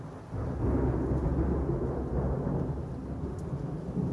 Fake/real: real